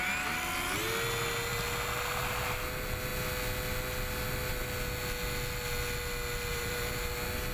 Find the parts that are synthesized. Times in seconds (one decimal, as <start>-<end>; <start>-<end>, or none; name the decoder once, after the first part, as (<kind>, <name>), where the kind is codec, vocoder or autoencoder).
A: 6.5-7.1 (vocoder, BigVGAN v2)

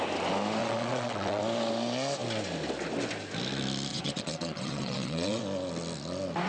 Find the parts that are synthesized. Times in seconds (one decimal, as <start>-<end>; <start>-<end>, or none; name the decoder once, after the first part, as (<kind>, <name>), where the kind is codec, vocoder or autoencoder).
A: 0.6-1.4 (vocoder, WaveNeXt); 3.9-5.4

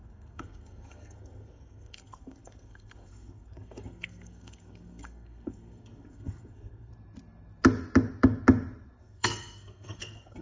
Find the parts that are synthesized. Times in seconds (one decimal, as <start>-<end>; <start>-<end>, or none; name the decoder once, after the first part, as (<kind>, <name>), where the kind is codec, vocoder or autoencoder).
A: 0.0-6.9 (codec, SNAC); 9.0-10.4

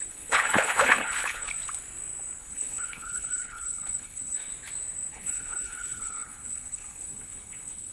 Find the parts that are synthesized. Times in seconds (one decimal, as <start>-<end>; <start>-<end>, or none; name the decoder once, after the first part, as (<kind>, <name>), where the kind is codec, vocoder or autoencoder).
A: 0.0-1.5 (codec, HILCodec); 2.4-4.5; 5.1-7.9